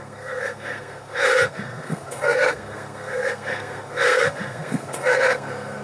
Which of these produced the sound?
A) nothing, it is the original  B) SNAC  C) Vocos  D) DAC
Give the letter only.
B